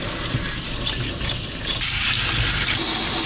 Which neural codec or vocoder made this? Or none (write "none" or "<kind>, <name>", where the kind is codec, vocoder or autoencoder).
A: none